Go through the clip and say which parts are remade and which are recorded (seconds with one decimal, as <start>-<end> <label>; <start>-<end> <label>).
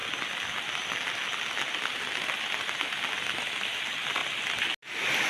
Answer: 0.0-5.3 recorded